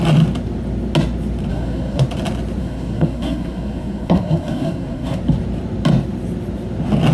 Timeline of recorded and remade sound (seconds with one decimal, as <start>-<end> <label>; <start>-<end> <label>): 0.0-1.5 recorded; 1.5-2.0 remade; 2.0-2.6 recorded; 2.6-5.2 remade; 5.2-7.1 recorded